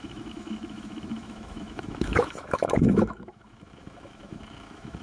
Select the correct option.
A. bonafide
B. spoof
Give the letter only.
B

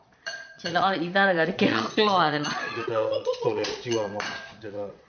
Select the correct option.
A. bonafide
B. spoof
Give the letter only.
B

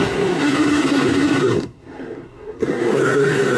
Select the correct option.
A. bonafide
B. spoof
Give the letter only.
B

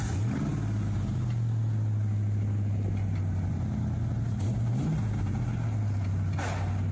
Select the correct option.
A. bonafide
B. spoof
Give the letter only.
A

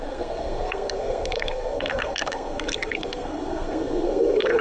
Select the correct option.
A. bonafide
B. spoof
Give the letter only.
B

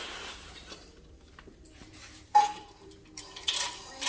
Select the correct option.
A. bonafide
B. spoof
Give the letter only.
B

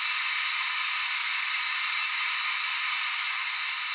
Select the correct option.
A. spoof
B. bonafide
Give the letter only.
B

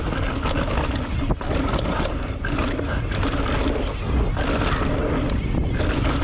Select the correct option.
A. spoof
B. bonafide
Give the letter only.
B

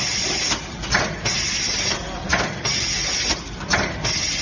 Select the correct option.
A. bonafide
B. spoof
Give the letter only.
A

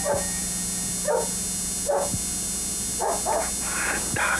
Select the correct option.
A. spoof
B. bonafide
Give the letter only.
B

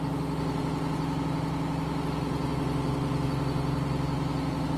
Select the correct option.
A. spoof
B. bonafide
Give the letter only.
B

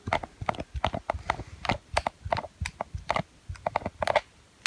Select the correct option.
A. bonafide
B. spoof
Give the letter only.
A